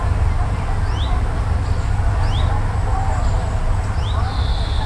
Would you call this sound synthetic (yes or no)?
no